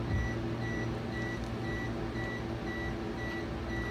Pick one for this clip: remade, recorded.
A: recorded